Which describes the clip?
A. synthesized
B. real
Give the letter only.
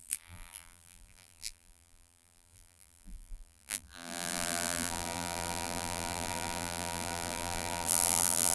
A